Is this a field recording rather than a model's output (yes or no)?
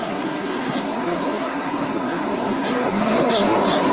no